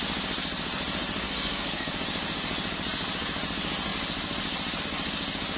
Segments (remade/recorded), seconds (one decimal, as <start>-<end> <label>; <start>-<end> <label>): 0.0-1.2 recorded; 1.2-1.9 remade; 1.9-5.6 recorded